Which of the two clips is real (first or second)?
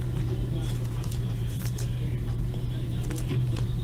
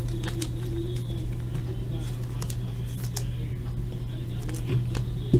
second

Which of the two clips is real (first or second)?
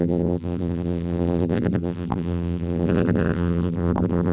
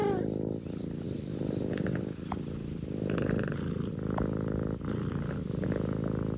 second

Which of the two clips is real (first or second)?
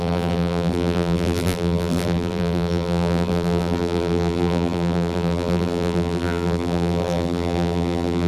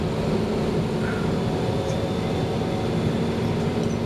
second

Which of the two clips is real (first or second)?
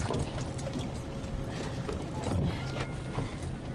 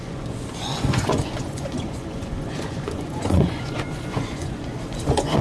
first